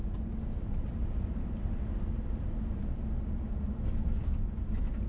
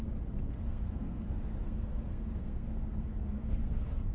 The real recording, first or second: first